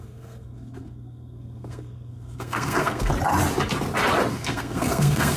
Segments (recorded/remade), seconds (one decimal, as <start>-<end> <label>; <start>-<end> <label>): 0.0-3.1 remade; 3.1-4.3 recorded; 4.3-5.4 remade